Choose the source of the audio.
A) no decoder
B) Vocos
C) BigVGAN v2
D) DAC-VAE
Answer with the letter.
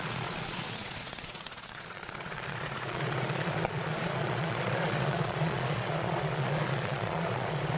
B